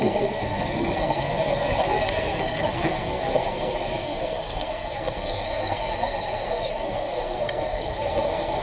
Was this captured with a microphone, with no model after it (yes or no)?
no